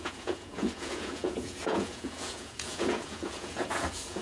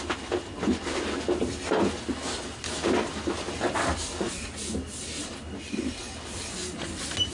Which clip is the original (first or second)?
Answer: second